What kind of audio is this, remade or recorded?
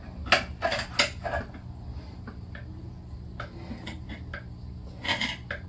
recorded